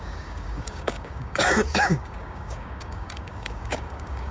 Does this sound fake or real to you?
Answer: fake